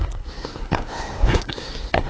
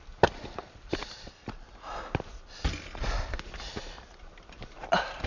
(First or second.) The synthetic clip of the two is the first